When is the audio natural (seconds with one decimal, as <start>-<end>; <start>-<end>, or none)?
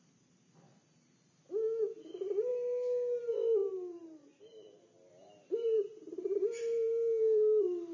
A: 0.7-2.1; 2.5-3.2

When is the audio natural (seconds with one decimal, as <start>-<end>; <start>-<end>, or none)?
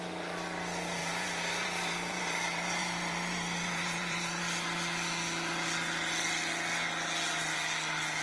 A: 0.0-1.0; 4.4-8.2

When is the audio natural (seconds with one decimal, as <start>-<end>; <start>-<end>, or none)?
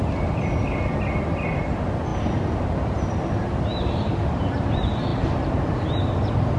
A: 0.0-6.6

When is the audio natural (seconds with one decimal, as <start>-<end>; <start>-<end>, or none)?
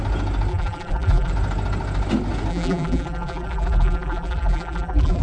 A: 0.0-0.5; 1.3-2.5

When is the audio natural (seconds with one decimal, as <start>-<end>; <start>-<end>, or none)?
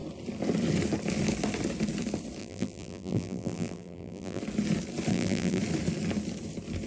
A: 0.0-2.4; 4.4-5.1; 5.6-6.9